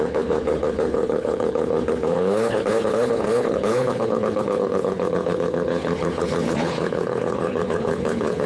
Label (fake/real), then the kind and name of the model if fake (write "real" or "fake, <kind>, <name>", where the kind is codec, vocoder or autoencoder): fake, codec, HILCodec